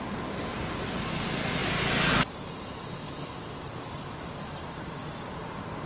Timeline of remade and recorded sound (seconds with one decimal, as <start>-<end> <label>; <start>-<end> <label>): 0.0-0.5 recorded; 0.5-1.1 remade; 1.1-1.6 recorded; 1.6-2.1 remade; 2.1-5.9 recorded